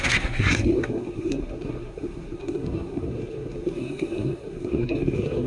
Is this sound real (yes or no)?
no